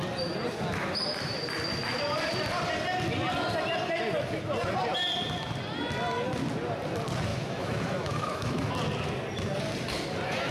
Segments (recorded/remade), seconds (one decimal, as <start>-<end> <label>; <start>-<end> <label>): 0.0-7.3 recorded; 7.3-8.7 remade; 8.7-10.5 recorded